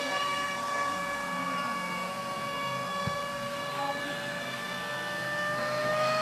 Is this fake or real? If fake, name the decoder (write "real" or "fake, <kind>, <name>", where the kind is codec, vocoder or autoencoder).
fake, codec, SNAC